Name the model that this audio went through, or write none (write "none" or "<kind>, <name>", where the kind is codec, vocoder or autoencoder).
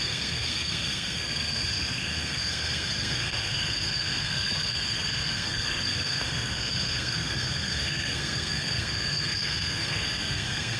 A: codec, SNAC